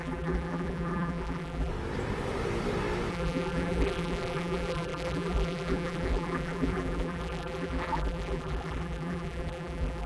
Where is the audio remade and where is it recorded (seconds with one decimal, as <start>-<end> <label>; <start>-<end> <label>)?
0.0-1.7 remade; 1.7-3.1 recorded; 3.1-10.1 remade